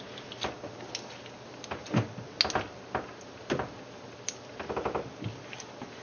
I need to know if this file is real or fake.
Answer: real